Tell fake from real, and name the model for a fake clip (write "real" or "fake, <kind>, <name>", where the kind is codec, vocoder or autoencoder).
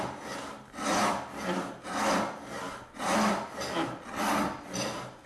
real